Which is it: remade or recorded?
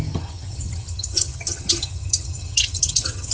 remade